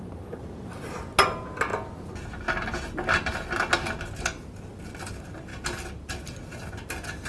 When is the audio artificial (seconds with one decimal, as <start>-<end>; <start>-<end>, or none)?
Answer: none